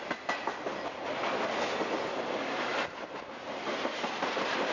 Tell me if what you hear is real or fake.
real